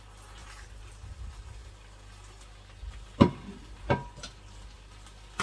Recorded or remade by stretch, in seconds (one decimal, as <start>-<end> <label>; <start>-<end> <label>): 0.0-5.4 recorded